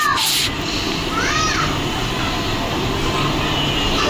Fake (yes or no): no